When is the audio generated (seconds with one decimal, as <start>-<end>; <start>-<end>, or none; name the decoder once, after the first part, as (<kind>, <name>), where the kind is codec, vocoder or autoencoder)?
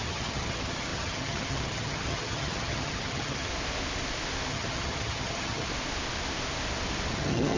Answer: 0.0-3.5 (vocoder, HiFi-GAN); 4.5-5.7; 7.1-7.6